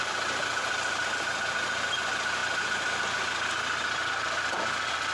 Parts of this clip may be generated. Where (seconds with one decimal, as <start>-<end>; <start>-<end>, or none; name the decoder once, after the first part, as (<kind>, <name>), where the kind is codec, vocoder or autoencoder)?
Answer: none